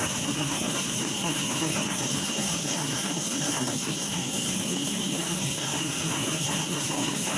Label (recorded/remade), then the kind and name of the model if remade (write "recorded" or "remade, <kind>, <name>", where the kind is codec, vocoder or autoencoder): remade, codec, SNAC